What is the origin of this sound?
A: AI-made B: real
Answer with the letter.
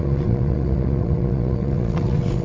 A